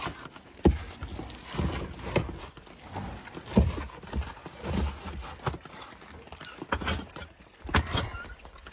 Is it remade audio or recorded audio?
recorded